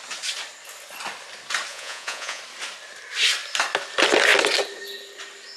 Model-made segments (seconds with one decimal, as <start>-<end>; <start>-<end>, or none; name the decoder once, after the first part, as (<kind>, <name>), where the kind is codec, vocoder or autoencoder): 1.7-2.4 (vocoder, Vocos)